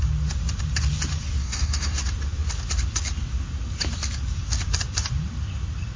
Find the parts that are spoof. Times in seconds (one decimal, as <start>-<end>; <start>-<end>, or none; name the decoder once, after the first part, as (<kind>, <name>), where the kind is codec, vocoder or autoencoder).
1.4-2.0 (codec, DAC)